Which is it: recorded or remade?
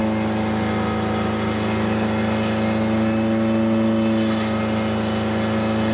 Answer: recorded